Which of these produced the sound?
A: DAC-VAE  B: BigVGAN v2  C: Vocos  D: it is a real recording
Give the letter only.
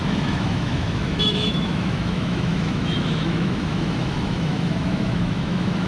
A